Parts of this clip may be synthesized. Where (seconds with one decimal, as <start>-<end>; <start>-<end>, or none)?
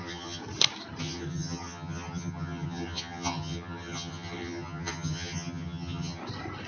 0.0-0.4; 1.0-6.2